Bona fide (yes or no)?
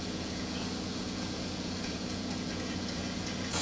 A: no